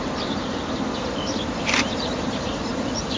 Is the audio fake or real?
fake